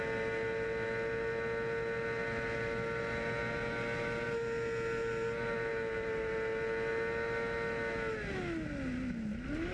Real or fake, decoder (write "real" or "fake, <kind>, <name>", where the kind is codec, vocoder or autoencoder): real